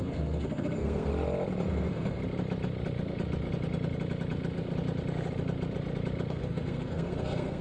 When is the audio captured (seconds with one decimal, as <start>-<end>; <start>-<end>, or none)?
1.1-1.7; 2.2-6.3